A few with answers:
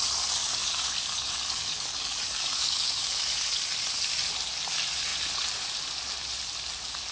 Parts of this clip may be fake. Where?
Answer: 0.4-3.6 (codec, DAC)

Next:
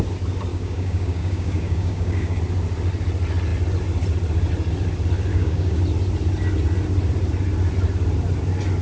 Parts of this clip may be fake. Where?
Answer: 0.5-2.4 (codec, DAC); 5.3-5.8

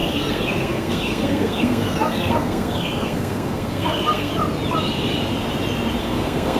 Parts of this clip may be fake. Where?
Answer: 0.0-4.3 (codec, SNAC); 6.0-6.6

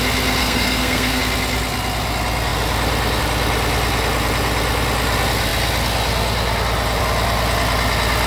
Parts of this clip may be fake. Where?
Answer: 0.4-1.2 (codec, SNAC)

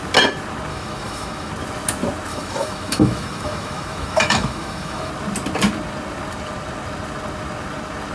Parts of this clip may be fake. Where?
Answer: 0.7-1.5 (autoencoder, DAC-VAE); 2.3-5.1